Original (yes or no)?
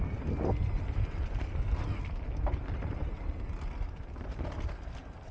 yes